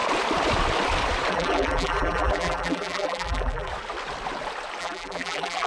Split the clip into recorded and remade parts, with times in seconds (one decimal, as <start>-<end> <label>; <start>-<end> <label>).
0.0-1.3 recorded; 1.3-3.7 remade; 3.7-4.8 recorded; 4.8-5.7 remade